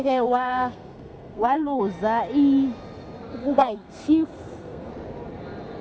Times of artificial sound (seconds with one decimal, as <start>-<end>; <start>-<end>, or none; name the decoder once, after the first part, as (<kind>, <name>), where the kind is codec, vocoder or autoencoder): 0.0-1.8 (codec, SNAC); 3.4-4.9